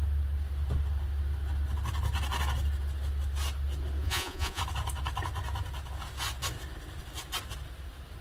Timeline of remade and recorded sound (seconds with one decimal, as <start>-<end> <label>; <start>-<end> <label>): 0.0-4.0 recorded; 4.0-4.6 remade; 4.6-8.2 recorded